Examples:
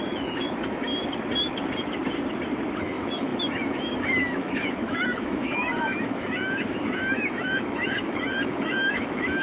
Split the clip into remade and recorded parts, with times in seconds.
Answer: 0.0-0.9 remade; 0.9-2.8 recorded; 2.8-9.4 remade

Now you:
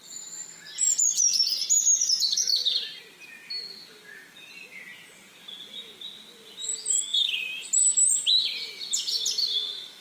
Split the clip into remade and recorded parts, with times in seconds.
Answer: 0.0-10.0 recorded

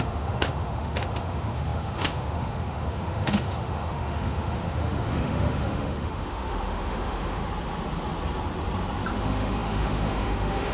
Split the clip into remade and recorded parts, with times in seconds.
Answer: 0.0-7.4 remade; 7.4-9.1 recorded; 9.1-10.7 remade

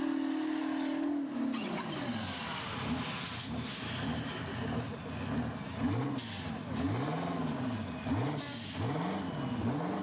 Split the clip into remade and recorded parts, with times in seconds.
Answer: 0.0-10.0 recorded